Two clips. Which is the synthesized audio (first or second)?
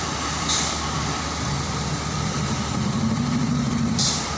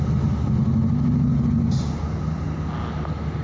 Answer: first